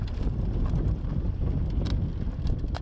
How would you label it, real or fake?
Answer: real